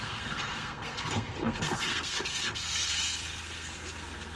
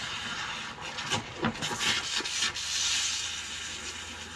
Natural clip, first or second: second